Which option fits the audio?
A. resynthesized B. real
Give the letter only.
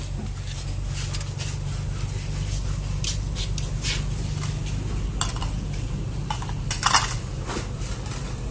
B